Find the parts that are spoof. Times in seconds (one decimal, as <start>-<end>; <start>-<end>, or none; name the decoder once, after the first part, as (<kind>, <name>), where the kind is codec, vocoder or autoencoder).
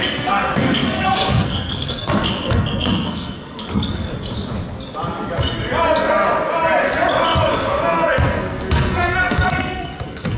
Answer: 0.0-4.1 (codec, SNAC); 7.5-10.4